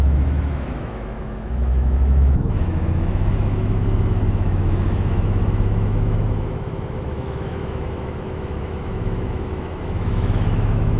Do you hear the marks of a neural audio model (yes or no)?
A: yes